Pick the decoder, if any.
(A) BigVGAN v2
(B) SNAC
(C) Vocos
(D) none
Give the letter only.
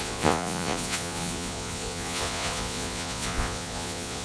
C